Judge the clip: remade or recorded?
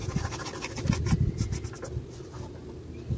recorded